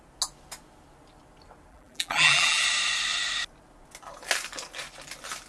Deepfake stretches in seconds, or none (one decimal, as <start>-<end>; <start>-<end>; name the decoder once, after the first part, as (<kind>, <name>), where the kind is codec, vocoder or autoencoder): 1.7-2.6 (vocoder, BigVGAN v2)

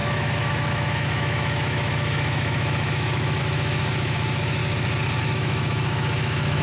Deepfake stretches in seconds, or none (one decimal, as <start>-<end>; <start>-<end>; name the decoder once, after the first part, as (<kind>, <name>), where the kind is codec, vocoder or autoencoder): 0.0-4.6 (autoencoder, DAC-VAE); 5.2-6.6